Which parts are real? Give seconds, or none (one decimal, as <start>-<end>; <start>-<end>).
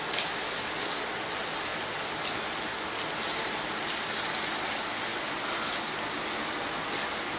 0.0-7.4